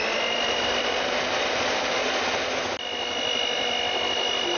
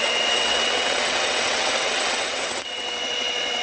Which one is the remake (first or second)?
second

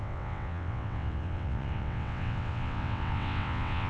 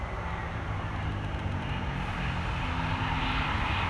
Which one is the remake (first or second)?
first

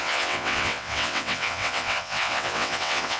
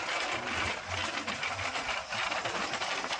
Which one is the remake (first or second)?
first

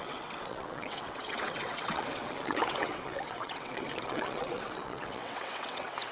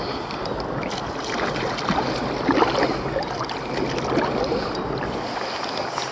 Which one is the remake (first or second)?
first